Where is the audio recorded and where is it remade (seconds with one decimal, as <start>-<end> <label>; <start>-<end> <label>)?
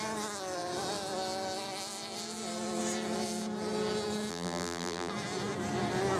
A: 0.0-4.3 recorded; 4.3-5.1 remade; 5.1-6.2 recorded